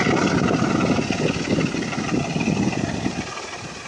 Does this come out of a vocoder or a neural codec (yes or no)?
no